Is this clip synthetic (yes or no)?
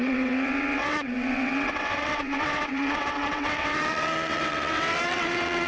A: yes